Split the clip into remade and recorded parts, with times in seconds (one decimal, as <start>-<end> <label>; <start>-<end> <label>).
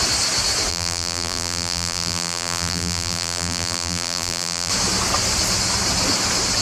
0.0-0.7 recorded; 0.7-4.7 remade; 4.7-6.6 recorded